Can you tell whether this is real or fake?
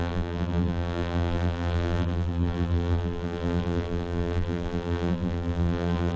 fake